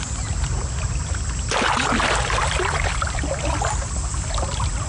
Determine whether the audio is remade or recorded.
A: recorded